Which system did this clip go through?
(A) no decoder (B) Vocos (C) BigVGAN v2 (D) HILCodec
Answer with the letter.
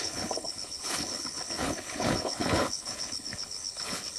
D